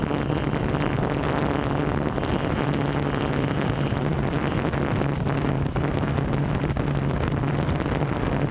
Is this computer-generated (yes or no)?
no